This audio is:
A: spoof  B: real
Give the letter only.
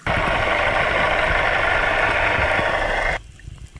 B